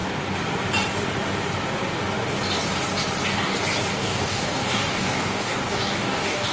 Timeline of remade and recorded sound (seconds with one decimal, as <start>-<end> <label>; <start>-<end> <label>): 0.0-3.9 recorded; 3.9-6.5 remade